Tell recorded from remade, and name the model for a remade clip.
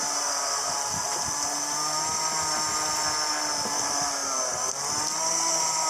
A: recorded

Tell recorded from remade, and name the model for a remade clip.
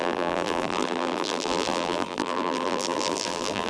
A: remade, vocoder, BigVGAN v2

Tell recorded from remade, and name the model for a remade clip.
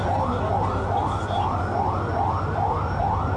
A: recorded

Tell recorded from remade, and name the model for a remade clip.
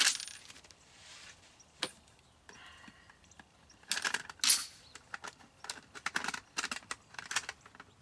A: recorded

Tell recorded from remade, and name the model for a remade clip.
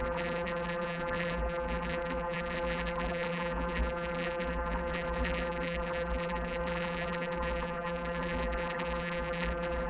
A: remade, vocoder, BigVGAN v2